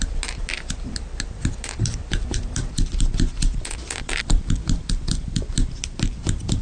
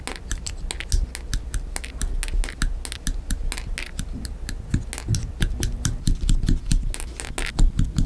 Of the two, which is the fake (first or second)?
first